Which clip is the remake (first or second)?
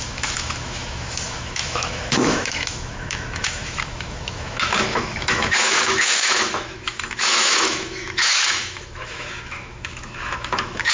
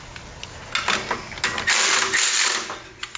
first